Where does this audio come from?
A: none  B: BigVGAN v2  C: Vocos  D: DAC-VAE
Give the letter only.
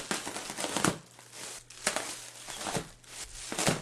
A